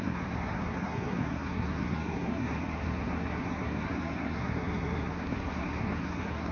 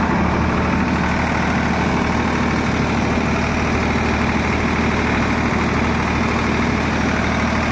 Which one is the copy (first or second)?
first